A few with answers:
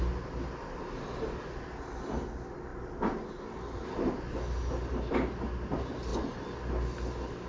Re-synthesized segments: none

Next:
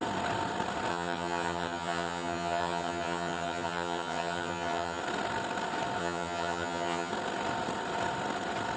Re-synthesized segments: 0.9-5.0 (vocoder, HiFi-GAN); 6.0-7.1

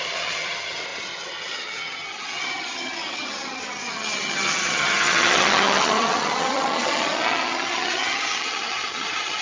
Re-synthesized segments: 0.0-9.4 (vocoder, HiFi-GAN)

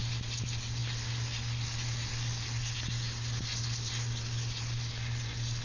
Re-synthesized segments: none

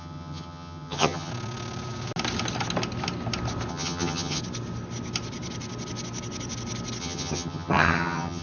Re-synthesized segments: 0.0-1.3 (vocoder, HiFi-GAN); 3.7-4.4; 7.0-8.4

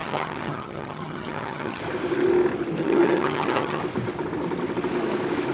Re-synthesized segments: 0.0-1.8 (vocoder, HiFi-GAN); 2.8-3.8

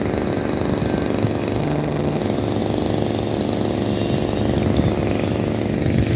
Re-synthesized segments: 1.6-2.2 (vocoder, HiFi-GAN)

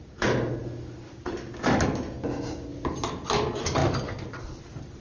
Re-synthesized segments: none